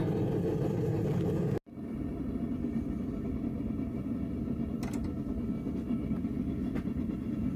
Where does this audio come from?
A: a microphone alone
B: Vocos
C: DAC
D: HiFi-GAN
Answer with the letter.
A